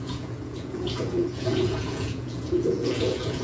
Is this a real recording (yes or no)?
no